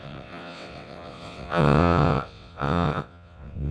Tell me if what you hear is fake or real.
fake